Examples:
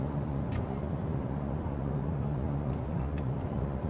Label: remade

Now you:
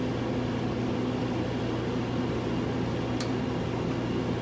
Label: recorded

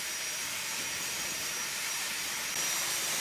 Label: remade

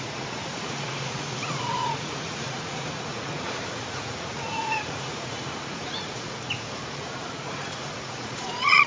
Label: remade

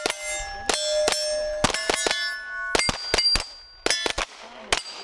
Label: recorded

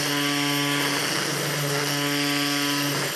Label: recorded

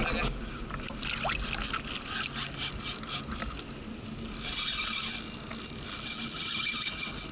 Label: recorded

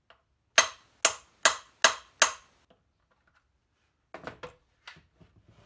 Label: recorded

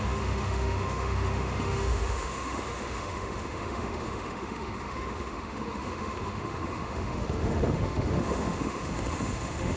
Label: remade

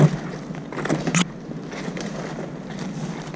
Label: recorded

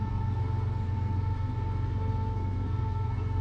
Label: remade